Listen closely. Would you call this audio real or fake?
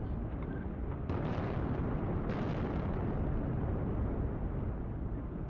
real